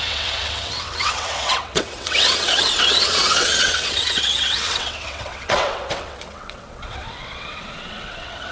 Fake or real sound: fake